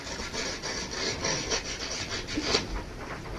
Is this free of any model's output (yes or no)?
yes